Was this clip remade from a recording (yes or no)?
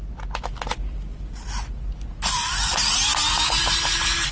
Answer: no